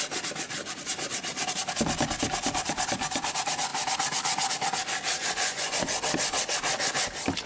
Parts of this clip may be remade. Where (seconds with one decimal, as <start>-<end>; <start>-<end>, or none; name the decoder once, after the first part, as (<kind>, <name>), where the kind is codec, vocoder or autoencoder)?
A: 5.2-6.0 (vocoder, Vocos)